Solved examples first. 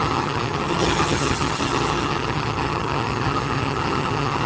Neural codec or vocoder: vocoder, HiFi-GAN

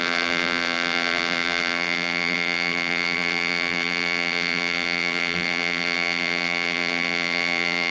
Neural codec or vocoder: vocoder, BigVGAN v2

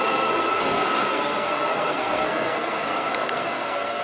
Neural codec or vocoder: codec, SNAC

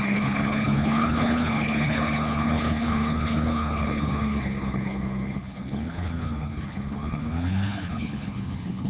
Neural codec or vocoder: codec, HILCodec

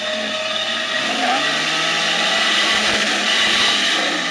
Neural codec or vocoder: none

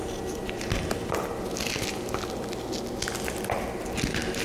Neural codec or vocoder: none